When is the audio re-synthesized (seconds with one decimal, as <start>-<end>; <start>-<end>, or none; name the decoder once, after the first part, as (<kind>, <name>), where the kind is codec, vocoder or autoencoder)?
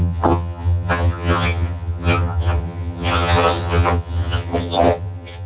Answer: 0.0-5.5 (vocoder, HiFi-GAN)